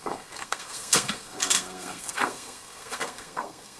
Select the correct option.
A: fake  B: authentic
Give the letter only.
A